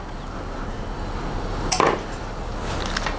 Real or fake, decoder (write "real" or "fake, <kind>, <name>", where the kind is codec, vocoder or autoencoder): real